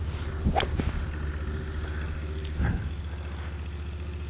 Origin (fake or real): real